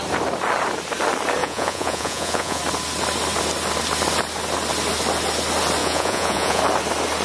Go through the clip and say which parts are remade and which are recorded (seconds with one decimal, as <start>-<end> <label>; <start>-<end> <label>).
0.0-1.4 recorded; 1.4-2.6 remade; 2.6-5.8 recorded; 5.8-6.6 remade; 6.6-7.2 recorded